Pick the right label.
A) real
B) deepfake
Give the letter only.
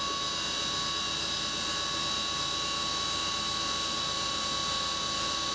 A